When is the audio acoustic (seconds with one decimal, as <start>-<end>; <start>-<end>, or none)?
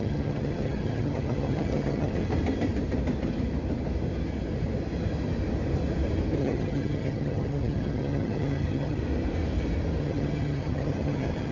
2.3-6.4; 9.0-10.0